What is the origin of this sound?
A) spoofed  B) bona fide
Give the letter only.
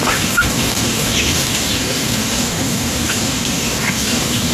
A